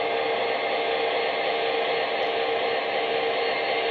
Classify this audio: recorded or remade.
recorded